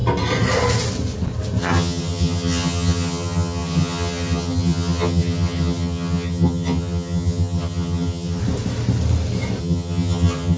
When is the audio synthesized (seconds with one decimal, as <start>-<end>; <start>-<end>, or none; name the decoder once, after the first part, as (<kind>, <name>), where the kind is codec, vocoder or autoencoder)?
1.6-8.4 (vocoder, HiFi-GAN); 9.6-10.6